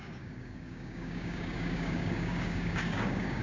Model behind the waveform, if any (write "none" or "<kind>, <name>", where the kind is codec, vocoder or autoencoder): codec, DAC